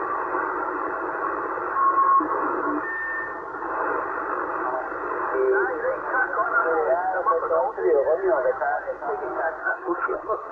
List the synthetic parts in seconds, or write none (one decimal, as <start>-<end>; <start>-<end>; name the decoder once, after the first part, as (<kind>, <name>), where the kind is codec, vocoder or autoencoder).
9.6-10.5 (codec, SNAC)